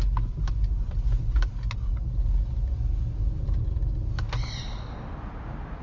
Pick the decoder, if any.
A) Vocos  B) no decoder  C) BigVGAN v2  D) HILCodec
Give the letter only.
B